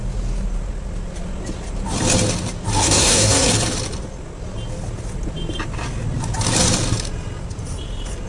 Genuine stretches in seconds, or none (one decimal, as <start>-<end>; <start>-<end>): 0.0-2.8; 3.5-8.3